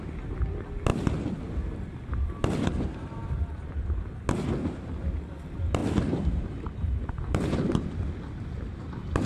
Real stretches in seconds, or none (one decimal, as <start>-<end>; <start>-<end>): 0.0-0.9; 1.4-3.2; 3.8-5.8; 8.8-9.3